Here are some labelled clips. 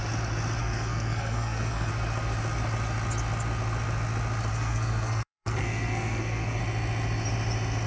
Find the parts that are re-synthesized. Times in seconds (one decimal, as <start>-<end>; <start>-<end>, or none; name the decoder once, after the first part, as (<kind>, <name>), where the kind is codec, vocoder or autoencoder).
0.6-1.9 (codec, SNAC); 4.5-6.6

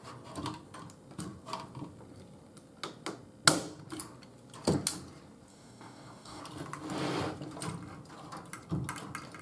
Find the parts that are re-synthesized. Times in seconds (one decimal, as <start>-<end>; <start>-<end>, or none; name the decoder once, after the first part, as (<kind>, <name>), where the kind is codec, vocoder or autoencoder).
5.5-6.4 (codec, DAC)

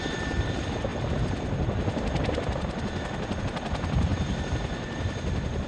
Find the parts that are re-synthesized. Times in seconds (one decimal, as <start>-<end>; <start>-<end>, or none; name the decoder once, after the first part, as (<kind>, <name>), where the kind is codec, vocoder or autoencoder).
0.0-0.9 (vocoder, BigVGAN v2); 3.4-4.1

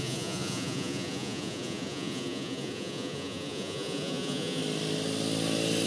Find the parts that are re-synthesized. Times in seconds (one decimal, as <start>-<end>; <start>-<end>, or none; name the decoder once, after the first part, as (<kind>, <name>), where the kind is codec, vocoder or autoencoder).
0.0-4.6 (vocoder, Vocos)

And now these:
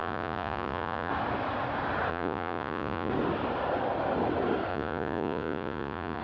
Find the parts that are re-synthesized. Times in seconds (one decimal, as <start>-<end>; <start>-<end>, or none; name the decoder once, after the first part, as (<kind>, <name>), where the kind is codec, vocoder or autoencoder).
0.0-1.1 (vocoder, Vocos); 2.1-3.1; 4.7-6.2

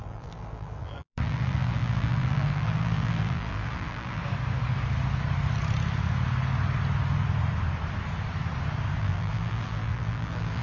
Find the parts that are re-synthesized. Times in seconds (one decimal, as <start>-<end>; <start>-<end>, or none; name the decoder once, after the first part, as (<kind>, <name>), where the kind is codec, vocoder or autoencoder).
0.0-4.2 (vocoder, BigVGAN v2); 9.0-10.6

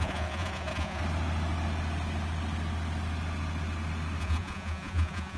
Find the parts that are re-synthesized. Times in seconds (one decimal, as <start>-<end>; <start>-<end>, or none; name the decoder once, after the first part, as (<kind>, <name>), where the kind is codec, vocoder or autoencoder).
0.0-1.0 (vocoder, Vocos); 4.2-5.4

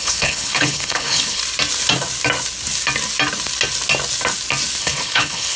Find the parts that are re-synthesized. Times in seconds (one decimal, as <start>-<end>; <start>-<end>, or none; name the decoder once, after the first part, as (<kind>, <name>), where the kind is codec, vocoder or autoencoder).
0.0-1.4 (codec, HILCodec); 4.8-5.6